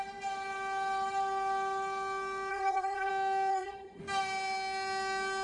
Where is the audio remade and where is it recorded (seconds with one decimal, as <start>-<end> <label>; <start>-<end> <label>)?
0.0-2.5 recorded; 2.5-3.1 remade; 3.1-3.5 recorded; 3.5-4.0 remade; 4.0-5.4 recorded